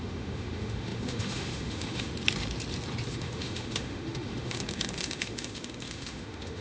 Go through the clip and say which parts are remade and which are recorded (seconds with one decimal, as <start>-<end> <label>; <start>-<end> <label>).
0.0-2.1 remade; 2.1-3.1 recorded; 3.1-6.6 remade